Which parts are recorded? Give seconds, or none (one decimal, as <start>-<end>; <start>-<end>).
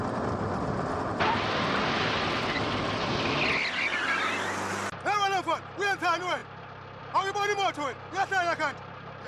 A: 0.0-9.3